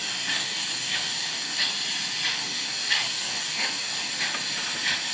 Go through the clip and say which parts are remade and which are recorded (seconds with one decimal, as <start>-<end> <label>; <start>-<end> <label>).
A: 0.0-1.7 remade; 1.7-2.3 recorded; 2.3-4.1 remade; 4.1-5.1 recorded